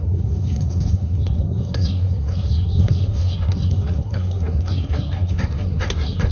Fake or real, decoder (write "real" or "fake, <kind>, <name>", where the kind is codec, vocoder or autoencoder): fake, codec, SNAC